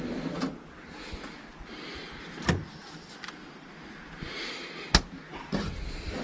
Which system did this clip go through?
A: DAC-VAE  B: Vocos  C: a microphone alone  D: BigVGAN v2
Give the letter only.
C